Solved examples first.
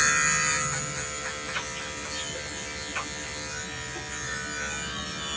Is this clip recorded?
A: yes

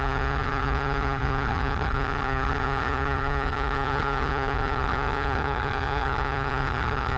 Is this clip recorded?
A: no